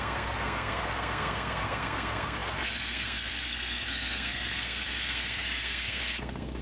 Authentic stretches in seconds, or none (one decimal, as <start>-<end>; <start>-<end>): none